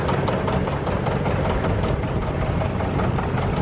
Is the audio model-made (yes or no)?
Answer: no